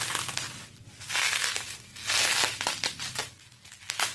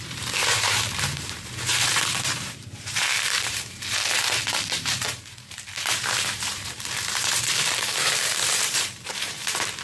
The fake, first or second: second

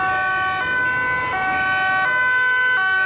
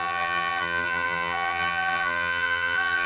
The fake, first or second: second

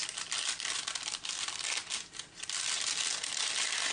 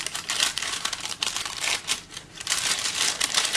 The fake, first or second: second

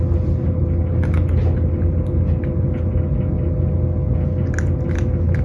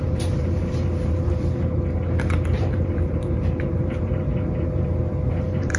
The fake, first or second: second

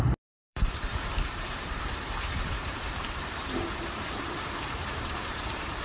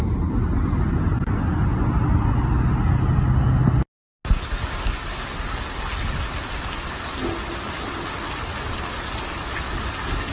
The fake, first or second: first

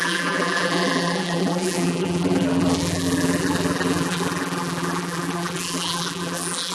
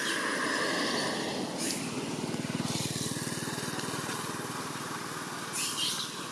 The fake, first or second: first